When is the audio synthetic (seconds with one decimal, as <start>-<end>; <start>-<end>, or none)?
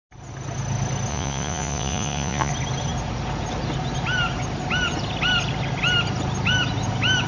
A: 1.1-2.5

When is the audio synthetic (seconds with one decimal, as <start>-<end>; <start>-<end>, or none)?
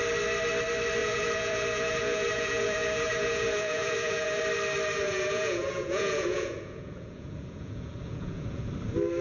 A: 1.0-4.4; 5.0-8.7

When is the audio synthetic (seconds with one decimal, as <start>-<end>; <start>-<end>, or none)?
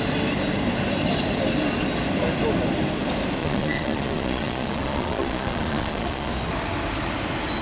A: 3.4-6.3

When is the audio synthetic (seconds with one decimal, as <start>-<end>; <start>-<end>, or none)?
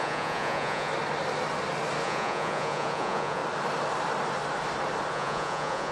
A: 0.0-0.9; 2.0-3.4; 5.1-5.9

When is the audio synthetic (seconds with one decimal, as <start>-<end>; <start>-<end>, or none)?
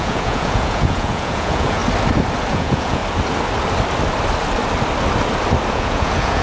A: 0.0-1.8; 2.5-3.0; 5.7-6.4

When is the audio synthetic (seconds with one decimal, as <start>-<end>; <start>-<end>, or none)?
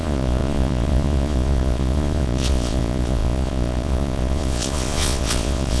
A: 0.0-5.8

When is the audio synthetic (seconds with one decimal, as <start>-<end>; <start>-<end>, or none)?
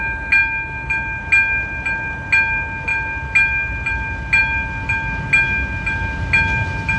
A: none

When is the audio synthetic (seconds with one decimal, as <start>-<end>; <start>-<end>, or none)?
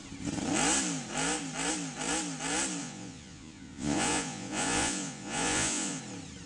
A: 2.8-6.0